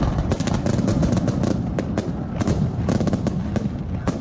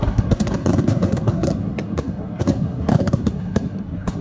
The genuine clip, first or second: first